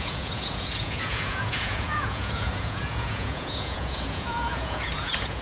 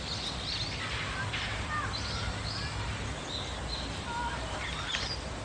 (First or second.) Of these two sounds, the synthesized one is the first